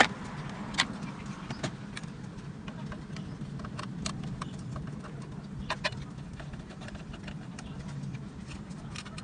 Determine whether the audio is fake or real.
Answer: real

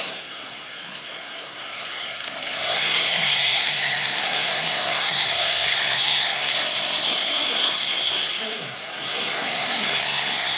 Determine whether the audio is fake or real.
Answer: fake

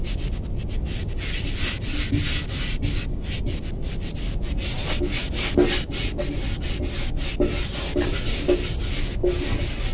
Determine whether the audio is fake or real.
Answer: real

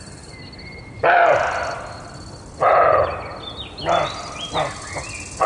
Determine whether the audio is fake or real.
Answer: real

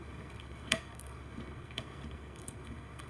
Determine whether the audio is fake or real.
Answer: fake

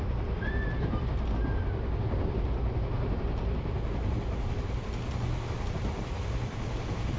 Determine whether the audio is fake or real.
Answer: real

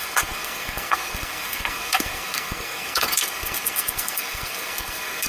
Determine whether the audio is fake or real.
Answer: fake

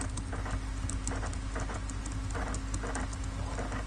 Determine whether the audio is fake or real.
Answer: real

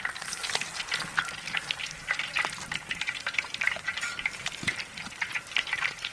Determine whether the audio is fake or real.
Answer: real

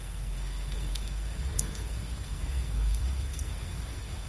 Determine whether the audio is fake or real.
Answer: fake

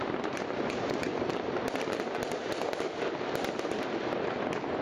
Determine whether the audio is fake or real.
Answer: real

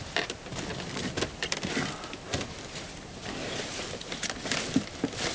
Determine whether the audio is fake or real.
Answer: real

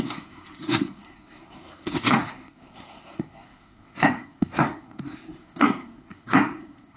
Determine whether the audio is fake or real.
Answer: fake